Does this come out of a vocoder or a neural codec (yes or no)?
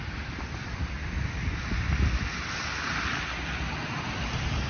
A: no